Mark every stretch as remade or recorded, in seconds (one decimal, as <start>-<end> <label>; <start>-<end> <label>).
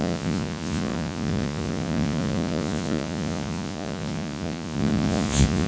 0.0-5.7 remade